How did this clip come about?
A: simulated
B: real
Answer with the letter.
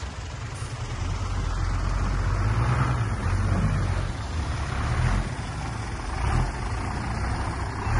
B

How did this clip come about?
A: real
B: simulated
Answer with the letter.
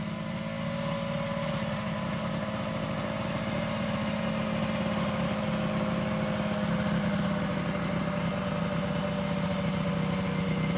A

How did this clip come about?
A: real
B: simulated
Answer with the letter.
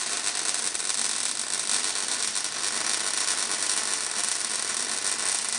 A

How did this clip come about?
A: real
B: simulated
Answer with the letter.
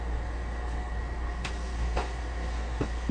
B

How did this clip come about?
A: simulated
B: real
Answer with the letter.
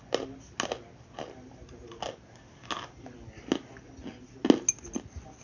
B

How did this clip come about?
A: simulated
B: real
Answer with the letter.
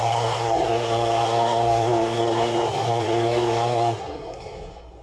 A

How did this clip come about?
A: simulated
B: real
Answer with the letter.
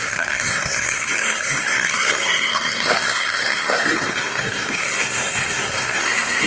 A